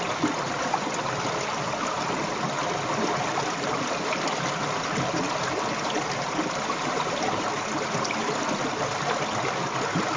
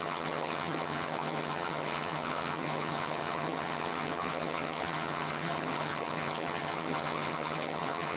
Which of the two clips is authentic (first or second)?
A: first